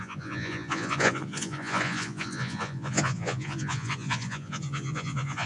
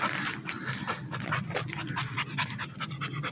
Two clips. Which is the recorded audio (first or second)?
second